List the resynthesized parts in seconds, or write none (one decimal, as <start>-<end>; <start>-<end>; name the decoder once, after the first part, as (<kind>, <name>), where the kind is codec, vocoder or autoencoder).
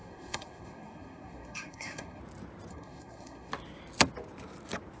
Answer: 0.0-2.2 (codec, SNAC); 2.7-3.5